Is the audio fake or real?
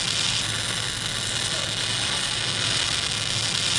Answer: real